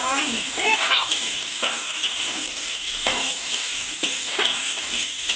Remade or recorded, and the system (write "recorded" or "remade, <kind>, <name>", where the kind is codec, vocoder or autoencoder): remade, codec, DAC